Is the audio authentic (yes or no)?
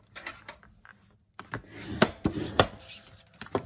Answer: yes